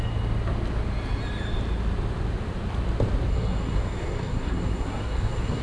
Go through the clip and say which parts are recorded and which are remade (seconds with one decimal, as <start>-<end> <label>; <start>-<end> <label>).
0.0-3.3 recorded; 3.3-5.6 remade